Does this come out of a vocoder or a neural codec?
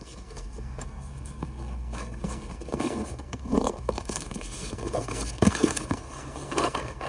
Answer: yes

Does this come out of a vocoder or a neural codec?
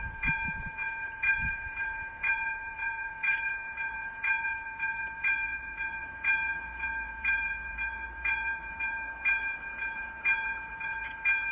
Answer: yes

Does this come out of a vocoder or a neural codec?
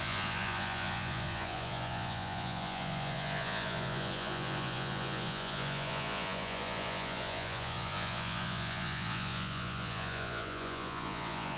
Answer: yes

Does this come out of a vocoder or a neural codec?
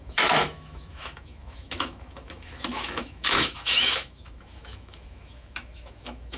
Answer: yes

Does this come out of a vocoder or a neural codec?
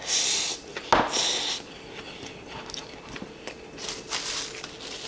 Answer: no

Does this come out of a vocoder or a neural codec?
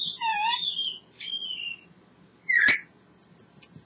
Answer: no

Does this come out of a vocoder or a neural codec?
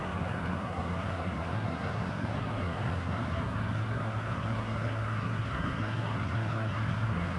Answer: yes